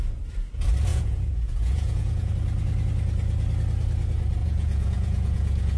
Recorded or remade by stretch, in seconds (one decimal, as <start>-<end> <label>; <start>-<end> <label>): 0.0-0.9 recorded; 0.9-2.3 remade; 2.3-4.4 recorded; 4.4-5.8 remade